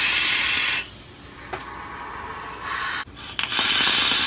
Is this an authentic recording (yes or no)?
yes